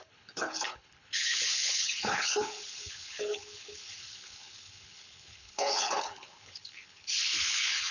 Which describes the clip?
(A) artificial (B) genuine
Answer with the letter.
A